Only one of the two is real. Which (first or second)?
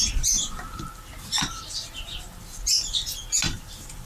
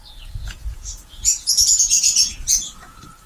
first